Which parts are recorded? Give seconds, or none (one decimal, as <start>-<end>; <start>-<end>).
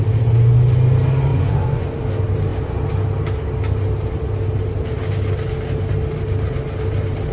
0.0-1.3; 2.0-7.3